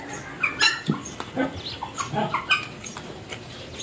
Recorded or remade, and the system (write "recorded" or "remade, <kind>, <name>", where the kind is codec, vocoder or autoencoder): recorded